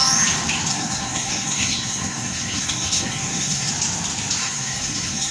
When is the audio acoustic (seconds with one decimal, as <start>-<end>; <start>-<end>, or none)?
0.0-0.7; 3.7-4.4